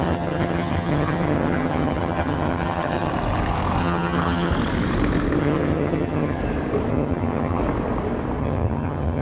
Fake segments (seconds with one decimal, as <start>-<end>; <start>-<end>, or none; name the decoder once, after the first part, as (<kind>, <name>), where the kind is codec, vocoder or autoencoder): 0.0-3.1 (vocoder, HiFi-GAN); 3.8-4.5; 5.4-6.4; 6.9-7.6; 8.4-9.2